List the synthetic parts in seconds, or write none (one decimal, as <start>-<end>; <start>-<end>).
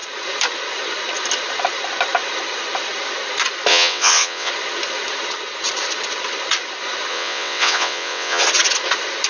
3.7-4.5; 7.1-8.4